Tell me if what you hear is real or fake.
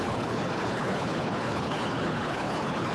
fake